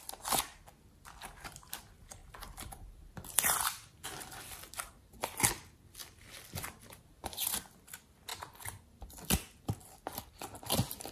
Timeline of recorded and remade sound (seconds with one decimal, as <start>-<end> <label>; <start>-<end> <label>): 0.0-2.2 recorded; 2.2-5.0 remade; 5.0-6.0 recorded; 6.0-7.7 remade; 7.7-11.1 recorded